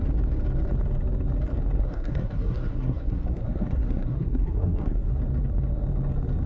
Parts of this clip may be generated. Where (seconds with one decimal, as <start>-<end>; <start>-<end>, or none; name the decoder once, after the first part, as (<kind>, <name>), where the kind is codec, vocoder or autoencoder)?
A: 1.8-5.2 (codec, SNAC)